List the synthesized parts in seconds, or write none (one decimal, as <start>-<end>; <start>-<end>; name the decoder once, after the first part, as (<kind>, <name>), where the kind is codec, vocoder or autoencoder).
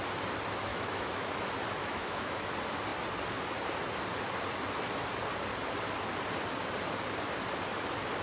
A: 0.7-1.3 (autoencoder, DAC-VAE); 1.8-2.5